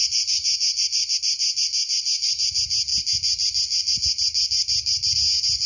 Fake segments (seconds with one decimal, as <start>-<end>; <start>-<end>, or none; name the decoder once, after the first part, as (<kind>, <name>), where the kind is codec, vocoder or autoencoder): none